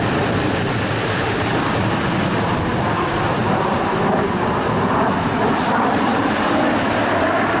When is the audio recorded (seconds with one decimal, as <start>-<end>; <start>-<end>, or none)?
0.0-6.1; 6.6-7.6

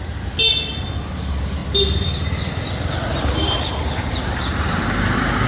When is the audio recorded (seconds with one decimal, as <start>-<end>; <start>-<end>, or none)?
0.0-5.5

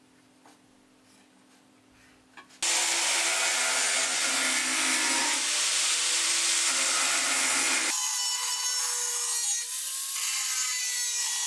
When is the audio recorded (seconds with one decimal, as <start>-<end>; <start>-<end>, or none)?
0.0-5.2; 6.3-11.5

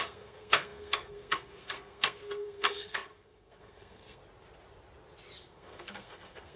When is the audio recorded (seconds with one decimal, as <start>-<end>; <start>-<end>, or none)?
4.2-5.5

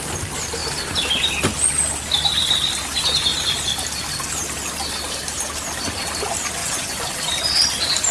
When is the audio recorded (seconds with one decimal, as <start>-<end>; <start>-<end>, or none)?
0.0-6.6; 7.1-8.1

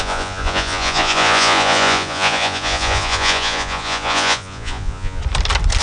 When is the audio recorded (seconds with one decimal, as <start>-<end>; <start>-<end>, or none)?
5.2-5.8

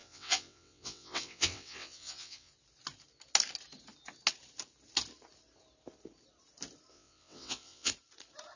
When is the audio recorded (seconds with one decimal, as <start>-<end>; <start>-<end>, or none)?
2.5-6.9; 7.9-8.6

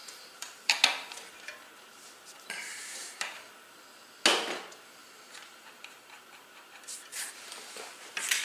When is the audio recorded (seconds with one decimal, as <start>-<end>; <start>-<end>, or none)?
0.8-2.7; 3.4-5.0; 7.8-8.4